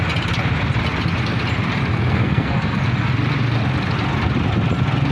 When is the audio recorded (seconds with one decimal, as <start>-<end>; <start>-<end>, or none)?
0.0-1.9; 2.8-5.1

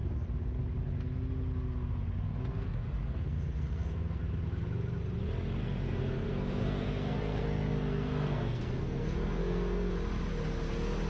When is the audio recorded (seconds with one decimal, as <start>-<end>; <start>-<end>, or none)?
0.0-2.5; 4.2-5.6; 9.9-11.1

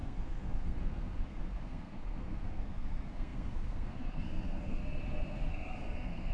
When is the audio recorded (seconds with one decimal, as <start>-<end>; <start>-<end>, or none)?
4.8-5.5

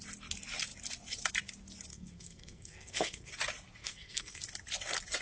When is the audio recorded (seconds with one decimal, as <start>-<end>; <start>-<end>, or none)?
0.0-1.9; 3.3-3.8; 4.4-5.2

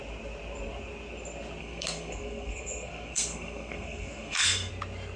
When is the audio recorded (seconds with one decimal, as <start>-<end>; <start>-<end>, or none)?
0.0-1.6; 4.7-5.2

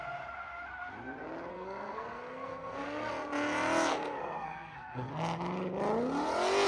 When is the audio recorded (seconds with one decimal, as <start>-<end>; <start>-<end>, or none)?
0.0-1.5; 3.1-3.9; 5.1-6.7